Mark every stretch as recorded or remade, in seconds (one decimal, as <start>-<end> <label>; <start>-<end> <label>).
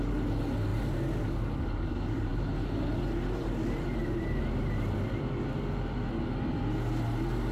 0.0-7.5 recorded